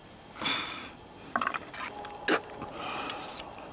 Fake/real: real